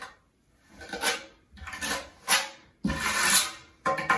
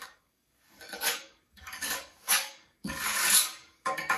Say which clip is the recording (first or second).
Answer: first